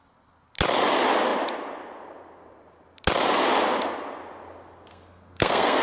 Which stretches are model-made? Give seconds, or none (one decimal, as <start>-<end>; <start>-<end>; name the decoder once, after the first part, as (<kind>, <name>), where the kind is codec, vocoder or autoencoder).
4.9-5.8 (codec, SNAC)